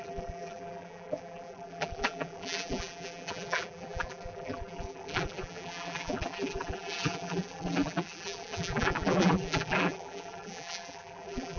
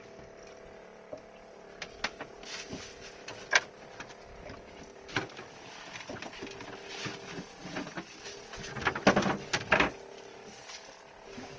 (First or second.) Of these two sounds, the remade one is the first